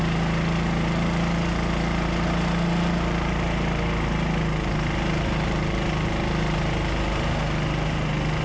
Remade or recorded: recorded